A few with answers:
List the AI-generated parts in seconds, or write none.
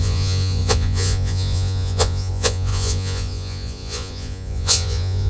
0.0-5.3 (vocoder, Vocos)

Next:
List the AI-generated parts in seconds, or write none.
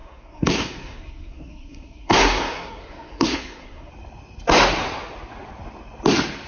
0.0-3.9 (codec, SNAC)